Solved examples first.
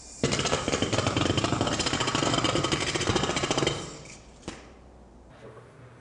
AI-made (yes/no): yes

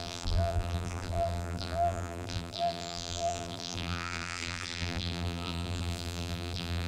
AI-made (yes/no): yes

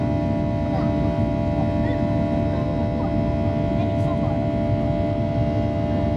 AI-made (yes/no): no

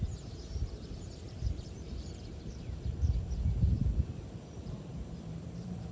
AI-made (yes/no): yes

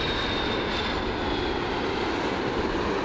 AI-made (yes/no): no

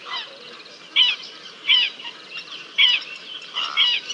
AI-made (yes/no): yes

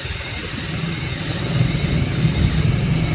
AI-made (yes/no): no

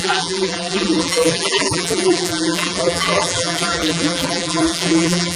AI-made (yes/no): yes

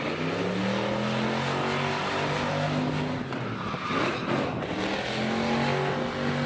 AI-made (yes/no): no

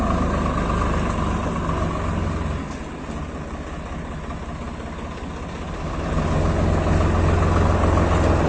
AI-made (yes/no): no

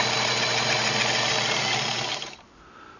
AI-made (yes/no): no